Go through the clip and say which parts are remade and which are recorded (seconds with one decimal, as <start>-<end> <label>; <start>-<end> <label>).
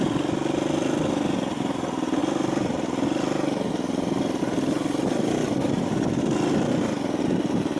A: 0.0-7.8 recorded